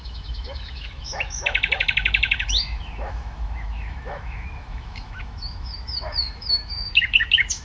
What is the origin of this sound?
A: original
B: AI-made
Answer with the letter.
B